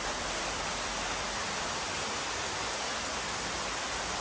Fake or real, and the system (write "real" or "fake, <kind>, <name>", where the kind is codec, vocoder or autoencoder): real